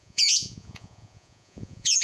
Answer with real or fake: fake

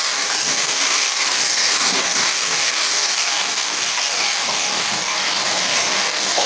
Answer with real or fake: fake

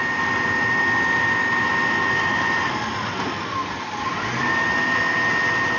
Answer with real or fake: real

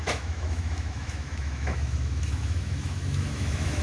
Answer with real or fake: fake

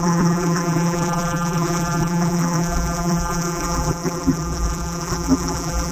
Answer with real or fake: fake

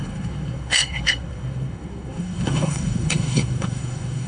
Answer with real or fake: fake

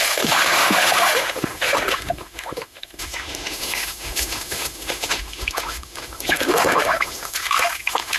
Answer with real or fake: fake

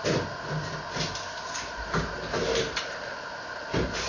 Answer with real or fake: real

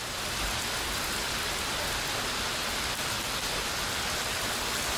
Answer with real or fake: real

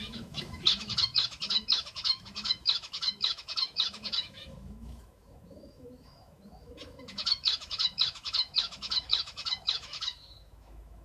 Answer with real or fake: fake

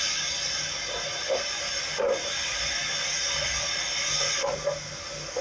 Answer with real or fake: real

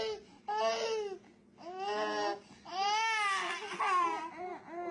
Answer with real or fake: real